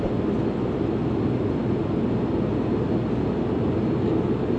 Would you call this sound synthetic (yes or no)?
no